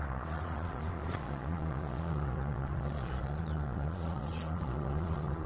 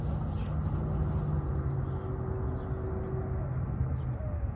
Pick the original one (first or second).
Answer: second